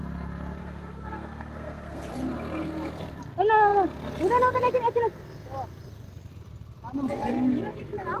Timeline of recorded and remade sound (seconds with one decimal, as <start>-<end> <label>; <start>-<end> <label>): 0.0-0.6 recorded; 0.6-2.1 remade; 2.1-8.2 recorded